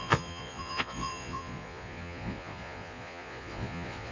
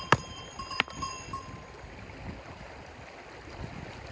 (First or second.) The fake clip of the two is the first